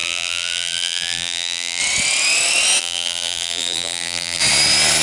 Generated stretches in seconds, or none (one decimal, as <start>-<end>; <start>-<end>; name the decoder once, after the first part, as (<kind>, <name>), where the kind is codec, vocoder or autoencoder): 0.0-1.8 (vocoder, BigVGAN v2); 2.8-4.4